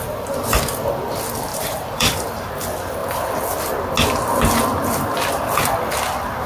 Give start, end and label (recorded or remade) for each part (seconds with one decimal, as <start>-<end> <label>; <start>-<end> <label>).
0.0-1.5 recorded; 1.5-2.5 remade; 2.5-6.5 recorded